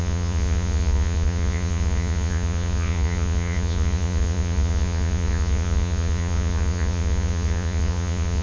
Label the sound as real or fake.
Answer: fake